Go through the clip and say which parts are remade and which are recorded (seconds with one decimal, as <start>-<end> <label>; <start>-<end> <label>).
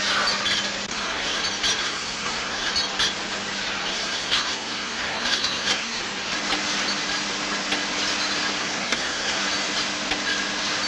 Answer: 0.0-0.9 recorded; 0.9-1.4 remade; 1.4-1.8 recorded; 1.8-2.7 remade; 2.7-3.9 recorded; 3.9-6.0 remade; 6.0-8.6 recorded; 8.6-9.4 remade; 9.4-10.9 recorded